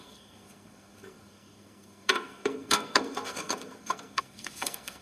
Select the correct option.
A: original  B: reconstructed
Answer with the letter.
B